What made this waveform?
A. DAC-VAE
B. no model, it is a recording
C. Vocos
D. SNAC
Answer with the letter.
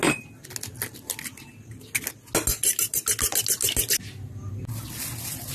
B